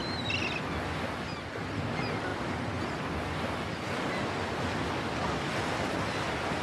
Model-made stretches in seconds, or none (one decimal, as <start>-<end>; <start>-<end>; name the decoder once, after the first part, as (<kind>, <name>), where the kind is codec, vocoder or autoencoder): none